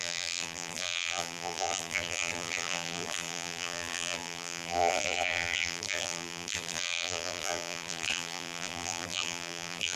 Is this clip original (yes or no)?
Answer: no